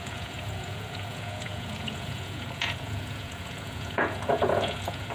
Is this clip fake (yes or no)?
yes